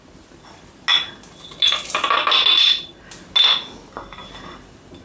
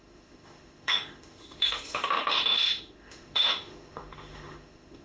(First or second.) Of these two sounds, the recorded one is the first